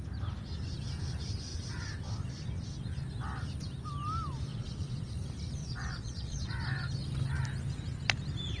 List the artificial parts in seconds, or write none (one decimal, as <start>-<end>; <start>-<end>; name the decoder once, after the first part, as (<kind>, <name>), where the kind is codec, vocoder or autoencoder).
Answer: 4.5-5.1 (vocoder, Vocos); 5.6-6.5